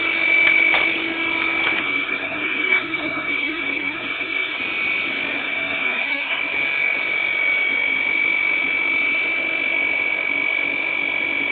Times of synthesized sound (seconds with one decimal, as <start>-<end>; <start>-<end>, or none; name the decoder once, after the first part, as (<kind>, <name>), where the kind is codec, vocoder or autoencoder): 1.8-4.6 (codec, SNAC); 5.4-6.4